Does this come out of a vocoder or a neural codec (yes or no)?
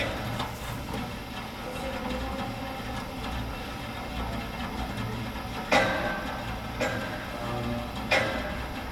no